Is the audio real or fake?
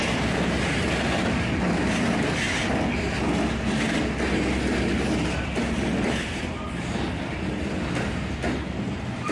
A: real